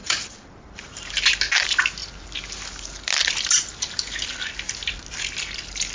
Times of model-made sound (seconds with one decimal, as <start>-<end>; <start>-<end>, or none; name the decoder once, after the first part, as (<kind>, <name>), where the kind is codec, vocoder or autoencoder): 0.0-1.1 (vocoder, BigVGAN v2)